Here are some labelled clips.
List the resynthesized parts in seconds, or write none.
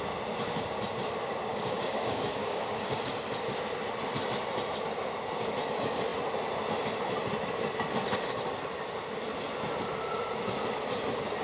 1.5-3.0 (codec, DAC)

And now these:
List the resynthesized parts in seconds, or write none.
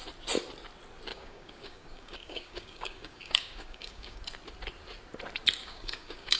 1.1-4.2 (codec, DAC); 5.6-6.4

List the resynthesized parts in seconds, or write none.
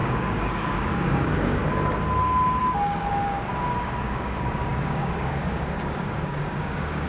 0.0-1.6 (codec, DAC); 2.6-7.1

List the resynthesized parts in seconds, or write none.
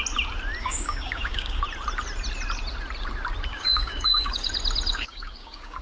0.6-1.6 (codec, DAC); 3.5-4.5; 4.9-5.8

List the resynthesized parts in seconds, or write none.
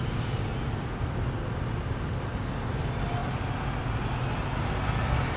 none